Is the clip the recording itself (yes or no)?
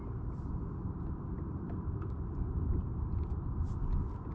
yes